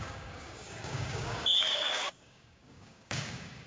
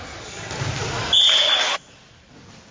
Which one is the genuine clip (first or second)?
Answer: second